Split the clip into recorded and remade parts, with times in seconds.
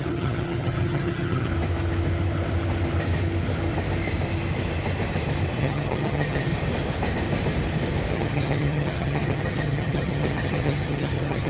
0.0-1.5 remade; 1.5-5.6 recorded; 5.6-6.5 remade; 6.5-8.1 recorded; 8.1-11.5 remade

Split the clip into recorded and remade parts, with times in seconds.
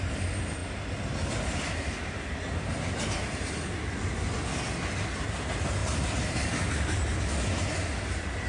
0.0-5.8 recorded; 5.8-7.2 remade; 7.2-8.5 recorded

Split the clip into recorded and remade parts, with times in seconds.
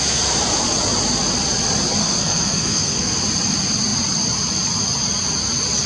0.0-2.0 recorded; 2.0-3.2 remade; 3.2-5.9 recorded